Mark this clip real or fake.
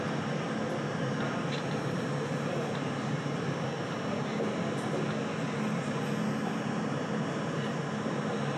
real